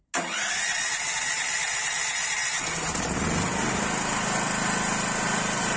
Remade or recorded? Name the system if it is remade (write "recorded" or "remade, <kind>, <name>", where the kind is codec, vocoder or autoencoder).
recorded